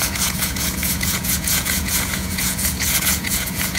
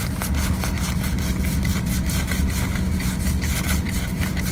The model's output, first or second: first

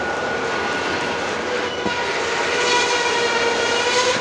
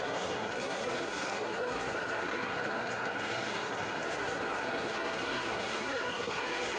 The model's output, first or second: second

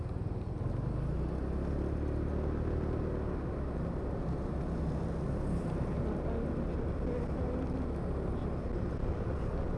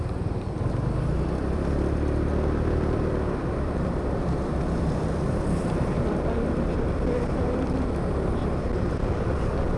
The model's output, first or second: second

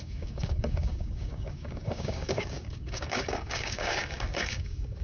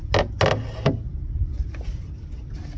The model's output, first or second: first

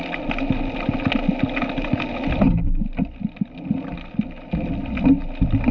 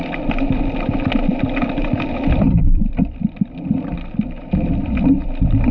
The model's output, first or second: second